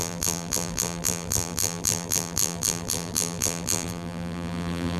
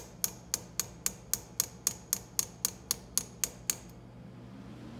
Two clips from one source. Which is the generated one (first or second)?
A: first